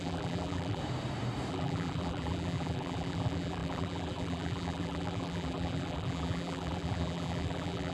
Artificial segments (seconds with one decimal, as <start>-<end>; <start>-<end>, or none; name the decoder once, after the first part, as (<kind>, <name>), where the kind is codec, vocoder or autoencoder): 0.0-0.8 (vocoder, BigVGAN v2); 1.5-7.9